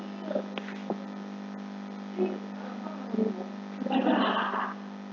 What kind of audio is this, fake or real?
real